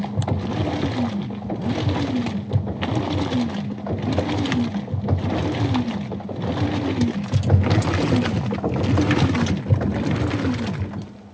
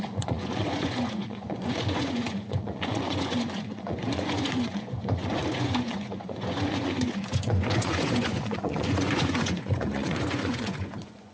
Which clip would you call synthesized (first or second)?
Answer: second